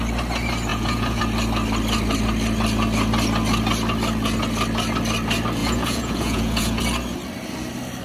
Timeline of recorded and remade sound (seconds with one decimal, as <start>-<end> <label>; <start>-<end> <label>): 0.0-0.7 recorded; 0.7-1.2 remade; 1.2-5.6 recorded; 5.6-6.8 remade; 6.8-8.0 recorded